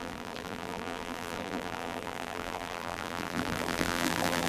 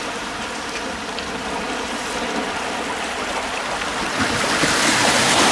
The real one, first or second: second